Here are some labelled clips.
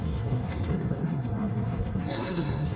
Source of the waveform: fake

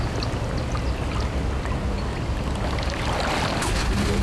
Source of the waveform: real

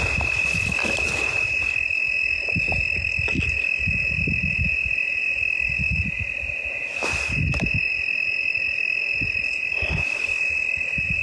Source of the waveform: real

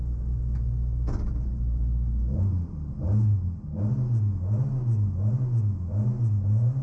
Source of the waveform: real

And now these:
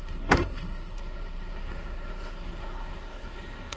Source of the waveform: fake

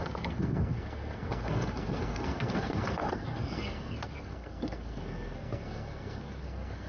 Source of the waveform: fake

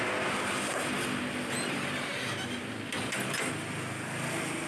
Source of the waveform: real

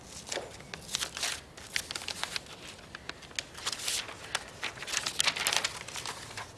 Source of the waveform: real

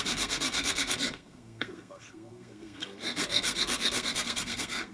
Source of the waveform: fake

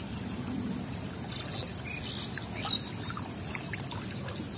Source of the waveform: real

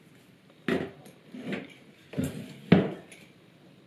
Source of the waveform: real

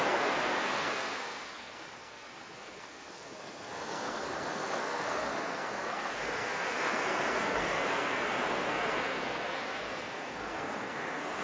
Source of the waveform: fake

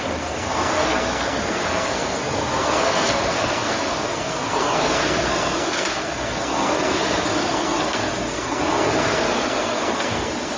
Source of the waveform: fake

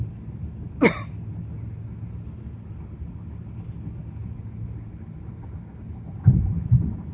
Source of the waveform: real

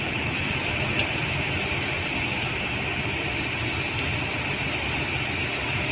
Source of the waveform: real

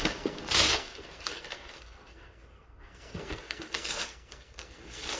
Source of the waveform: fake